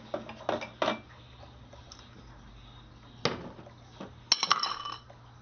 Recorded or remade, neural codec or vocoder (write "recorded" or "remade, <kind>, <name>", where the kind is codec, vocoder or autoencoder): recorded